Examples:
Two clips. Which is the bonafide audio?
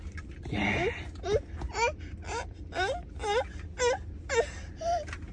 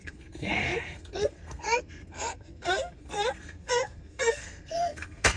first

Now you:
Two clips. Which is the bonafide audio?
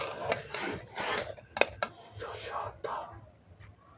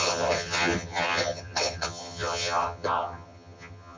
first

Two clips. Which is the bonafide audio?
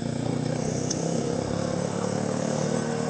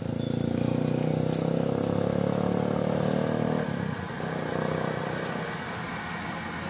second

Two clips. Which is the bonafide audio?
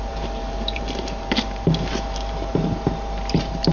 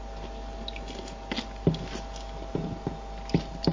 second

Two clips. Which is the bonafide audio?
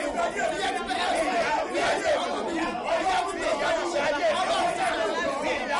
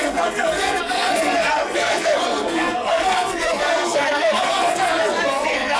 first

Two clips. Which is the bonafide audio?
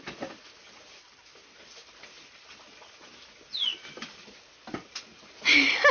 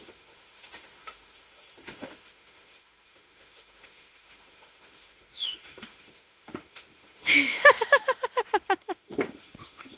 first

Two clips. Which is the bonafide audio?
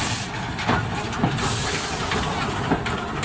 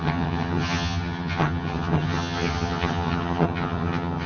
first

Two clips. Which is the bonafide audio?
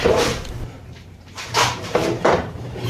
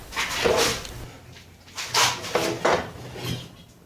second